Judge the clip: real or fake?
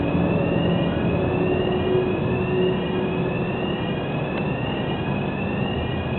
real